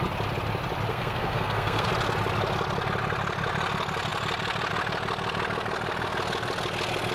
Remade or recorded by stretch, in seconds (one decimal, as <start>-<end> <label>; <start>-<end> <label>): 0.0-0.9 recorded; 0.9-1.9 remade; 1.9-7.1 recorded